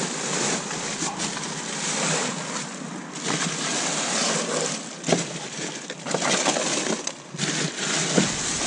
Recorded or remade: remade